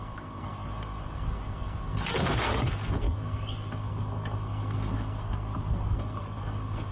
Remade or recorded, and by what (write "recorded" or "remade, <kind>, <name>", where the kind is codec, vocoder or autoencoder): remade, codec, SNAC